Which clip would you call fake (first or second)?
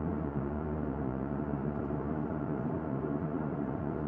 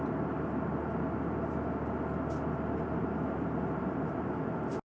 first